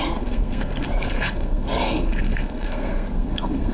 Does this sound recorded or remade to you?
remade